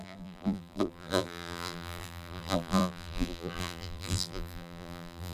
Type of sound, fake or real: fake